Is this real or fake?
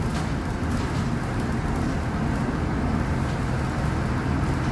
real